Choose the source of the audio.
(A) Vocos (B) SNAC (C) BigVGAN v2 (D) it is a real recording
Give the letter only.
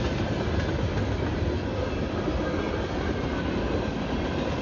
D